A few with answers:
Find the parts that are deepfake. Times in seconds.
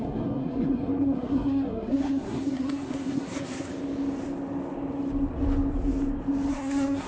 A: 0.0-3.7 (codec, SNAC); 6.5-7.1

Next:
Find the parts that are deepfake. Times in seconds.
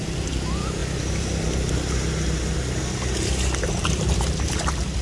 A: none